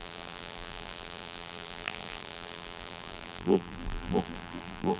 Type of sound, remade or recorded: remade